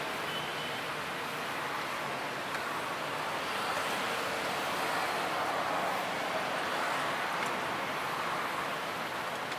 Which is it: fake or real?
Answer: real